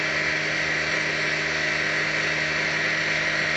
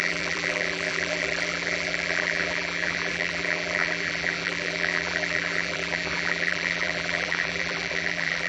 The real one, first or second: first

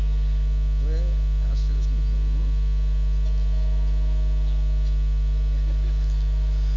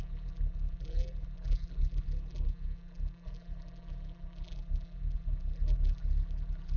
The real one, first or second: first